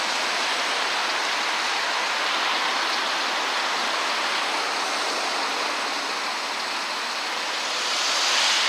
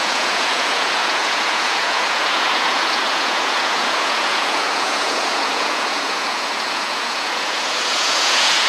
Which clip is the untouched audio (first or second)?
first